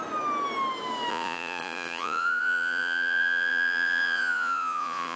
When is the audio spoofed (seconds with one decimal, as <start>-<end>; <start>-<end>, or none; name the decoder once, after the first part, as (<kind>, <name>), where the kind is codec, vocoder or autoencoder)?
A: 1.1-5.2 (vocoder, Vocos)